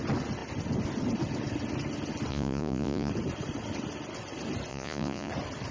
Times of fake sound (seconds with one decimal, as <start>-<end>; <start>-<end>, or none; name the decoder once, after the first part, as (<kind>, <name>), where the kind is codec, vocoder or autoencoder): 2.3-3.1 (vocoder, Vocos); 4.7-5.3